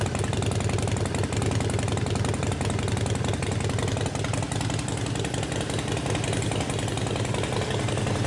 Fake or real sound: real